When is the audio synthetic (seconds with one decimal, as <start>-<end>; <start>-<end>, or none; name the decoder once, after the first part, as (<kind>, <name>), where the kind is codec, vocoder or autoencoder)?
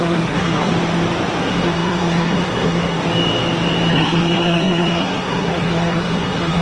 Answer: 0.0-0.7 (codec, SNAC); 1.4-3.0; 3.9-6.6